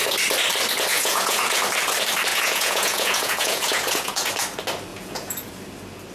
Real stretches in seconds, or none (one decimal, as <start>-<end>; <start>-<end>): 0.0-0.9; 1.6-2.3; 4.3-4.9; 5.5-6.1